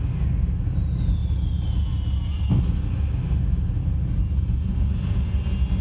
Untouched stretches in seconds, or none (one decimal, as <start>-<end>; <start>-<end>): 0.0-5.8